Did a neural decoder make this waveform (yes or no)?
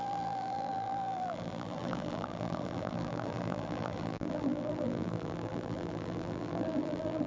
yes